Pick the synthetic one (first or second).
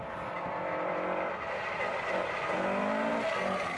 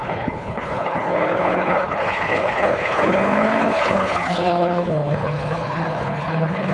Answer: second